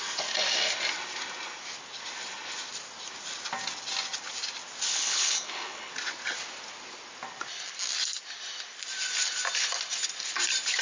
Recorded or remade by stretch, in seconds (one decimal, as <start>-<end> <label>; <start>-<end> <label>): 0.0-4.9 recorded; 4.9-5.9 remade; 5.9-10.8 recorded